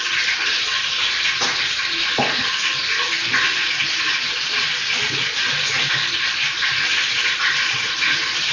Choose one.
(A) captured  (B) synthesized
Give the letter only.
A